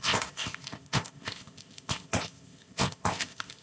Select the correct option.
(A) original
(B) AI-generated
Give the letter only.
B